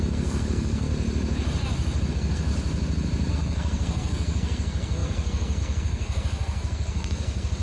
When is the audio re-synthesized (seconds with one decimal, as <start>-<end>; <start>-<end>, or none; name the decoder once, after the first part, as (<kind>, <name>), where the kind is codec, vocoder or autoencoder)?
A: 0.0-0.9 (codec, SNAC); 2.1-2.5; 3.3-7.6